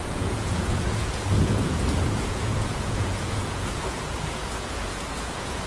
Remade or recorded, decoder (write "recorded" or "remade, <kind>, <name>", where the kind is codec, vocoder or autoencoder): remade, vocoder, Vocos